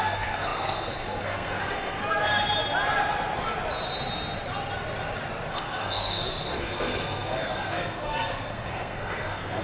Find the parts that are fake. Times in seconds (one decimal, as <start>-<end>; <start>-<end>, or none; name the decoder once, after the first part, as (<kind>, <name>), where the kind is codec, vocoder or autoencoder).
0.0-2.2 (codec, SNAC); 5.5-9.6